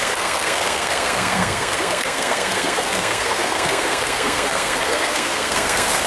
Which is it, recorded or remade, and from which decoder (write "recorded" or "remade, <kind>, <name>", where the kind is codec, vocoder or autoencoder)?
remade, codec, SNAC